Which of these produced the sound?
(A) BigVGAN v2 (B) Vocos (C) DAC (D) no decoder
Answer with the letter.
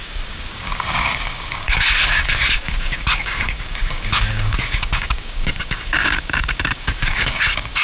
C